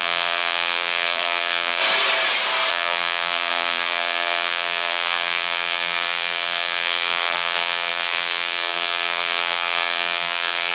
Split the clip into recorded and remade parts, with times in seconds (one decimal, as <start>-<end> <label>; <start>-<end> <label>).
0.0-1.8 remade; 1.8-2.7 recorded; 2.7-10.7 remade